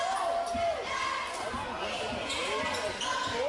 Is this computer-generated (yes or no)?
no